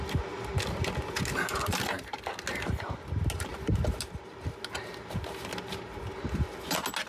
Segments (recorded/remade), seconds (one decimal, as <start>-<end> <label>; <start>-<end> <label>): 0.0-7.1 recorded